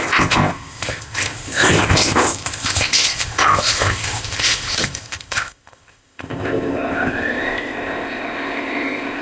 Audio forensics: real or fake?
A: fake